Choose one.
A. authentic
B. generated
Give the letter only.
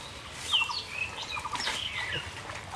A